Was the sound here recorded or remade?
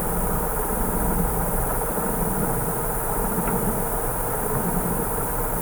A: recorded